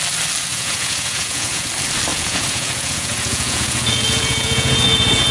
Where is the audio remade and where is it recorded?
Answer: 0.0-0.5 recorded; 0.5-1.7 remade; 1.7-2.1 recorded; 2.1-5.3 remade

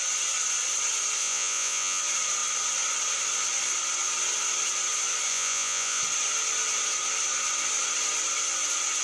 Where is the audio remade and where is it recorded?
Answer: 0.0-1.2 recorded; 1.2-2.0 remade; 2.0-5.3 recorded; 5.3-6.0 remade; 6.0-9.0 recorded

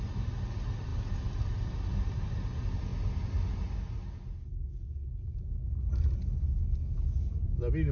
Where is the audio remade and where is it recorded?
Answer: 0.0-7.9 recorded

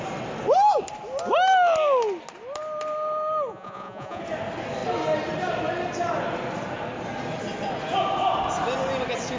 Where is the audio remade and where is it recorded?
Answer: 0.0-3.5 recorded; 3.5-4.2 remade; 4.2-9.4 recorded

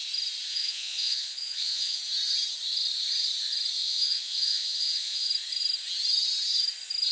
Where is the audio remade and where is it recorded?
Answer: 0.0-0.5 recorded; 0.5-2.0 remade; 2.0-3.8 recorded; 3.8-5.3 remade; 5.3-7.1 recorded

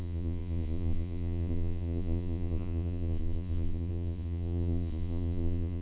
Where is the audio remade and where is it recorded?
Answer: 0.0-5.8 remade

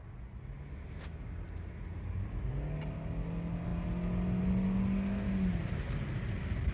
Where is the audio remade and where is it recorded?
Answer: 0.0-6.7 recorded